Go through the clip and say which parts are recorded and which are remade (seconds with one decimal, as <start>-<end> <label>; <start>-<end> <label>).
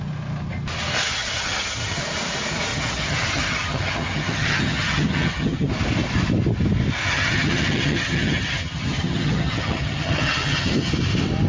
0.0-1.1 recorded; 1.1-2.0 remade; 2.0-2.7 recorded; 2.7-5.7 remade; 5.7-7.0 recorded; 7.0-10.9 remade; 10.9-11.5 recorded